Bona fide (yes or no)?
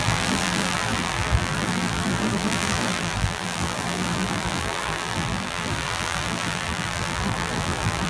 no